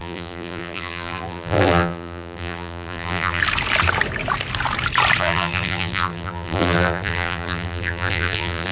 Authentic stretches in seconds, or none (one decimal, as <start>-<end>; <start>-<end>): 3.4-5.2